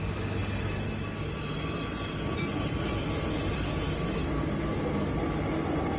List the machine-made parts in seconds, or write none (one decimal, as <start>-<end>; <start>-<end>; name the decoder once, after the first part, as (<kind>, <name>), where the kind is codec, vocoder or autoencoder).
none